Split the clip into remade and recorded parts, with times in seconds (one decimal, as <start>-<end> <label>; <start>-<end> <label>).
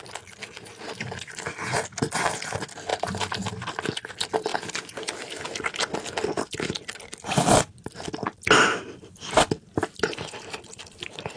0.0-2.9 recorded; 2.9-3.5 remade; 3.5-11.4 recorded